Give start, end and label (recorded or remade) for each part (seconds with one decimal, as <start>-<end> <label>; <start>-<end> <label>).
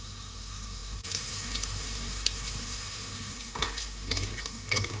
0.0-5.0 remade